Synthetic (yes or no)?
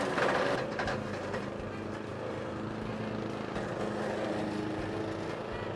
no